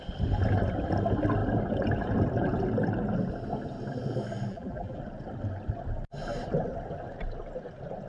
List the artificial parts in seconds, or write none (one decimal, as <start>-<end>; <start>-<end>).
4.5-5.0